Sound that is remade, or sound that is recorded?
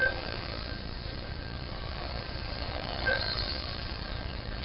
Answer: remade